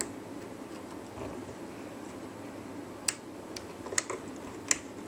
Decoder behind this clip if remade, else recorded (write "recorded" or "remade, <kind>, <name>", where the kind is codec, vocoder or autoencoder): recorded